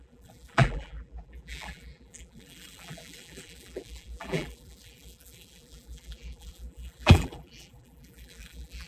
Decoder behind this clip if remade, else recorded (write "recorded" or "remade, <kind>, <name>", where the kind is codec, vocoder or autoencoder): remade, vocoder, BigVGAN v2